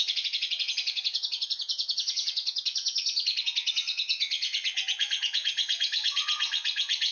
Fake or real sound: fake